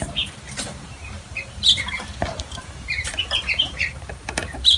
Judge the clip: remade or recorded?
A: remade